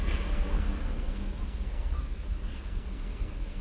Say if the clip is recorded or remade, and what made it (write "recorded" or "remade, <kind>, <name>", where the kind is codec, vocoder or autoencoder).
remade, codec, SNAC